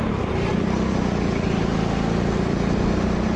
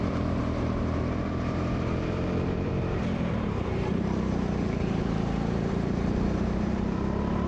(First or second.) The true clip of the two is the first